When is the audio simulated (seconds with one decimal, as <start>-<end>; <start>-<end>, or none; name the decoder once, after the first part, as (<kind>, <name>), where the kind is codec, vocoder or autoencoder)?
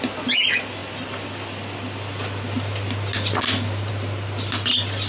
none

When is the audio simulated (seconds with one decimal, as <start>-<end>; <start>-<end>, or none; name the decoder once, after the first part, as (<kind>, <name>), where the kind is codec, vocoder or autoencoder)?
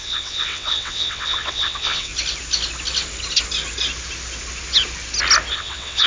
0.0-2.1 (vocoder, WaveNeXt); 5.5-6.1